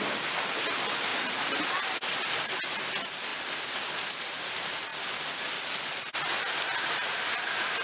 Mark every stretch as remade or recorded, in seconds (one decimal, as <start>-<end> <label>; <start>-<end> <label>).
0.0-7.8 recorded